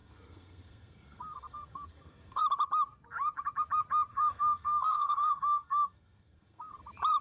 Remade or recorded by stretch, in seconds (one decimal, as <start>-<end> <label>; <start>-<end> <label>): 0.0-2.4 remade; 2.4-4.1 recorded; 4.1-6.8 remade; 6.8-7.2 recorded